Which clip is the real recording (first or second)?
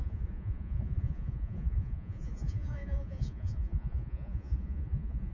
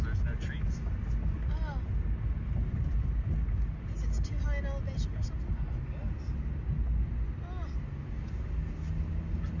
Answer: second